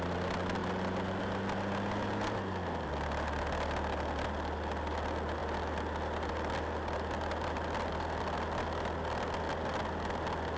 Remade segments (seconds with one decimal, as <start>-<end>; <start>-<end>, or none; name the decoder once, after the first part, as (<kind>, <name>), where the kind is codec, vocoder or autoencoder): 0.6-1.2 (vocoder, BigVGAN v2); 5.4-7.9